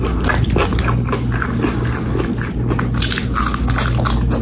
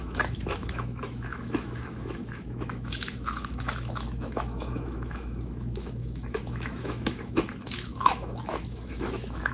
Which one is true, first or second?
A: first